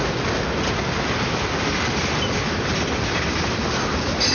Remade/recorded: recorded